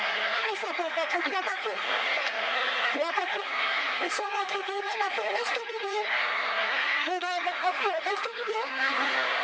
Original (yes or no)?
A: no